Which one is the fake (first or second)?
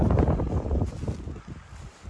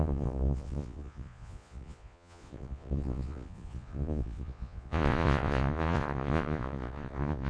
second